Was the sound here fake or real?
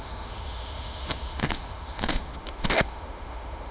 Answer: fake